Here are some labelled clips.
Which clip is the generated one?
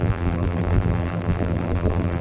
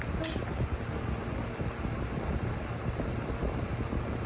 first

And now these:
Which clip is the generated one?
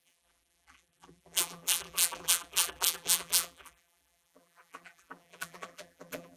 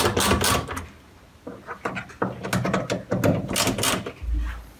first